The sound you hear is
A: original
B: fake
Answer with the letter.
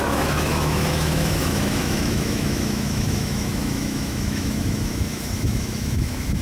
B